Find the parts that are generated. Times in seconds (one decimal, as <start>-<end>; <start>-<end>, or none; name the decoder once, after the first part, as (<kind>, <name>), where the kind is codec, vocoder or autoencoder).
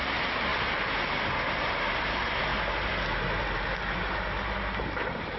none